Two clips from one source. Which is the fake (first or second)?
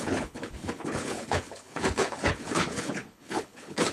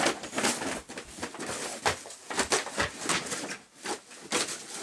first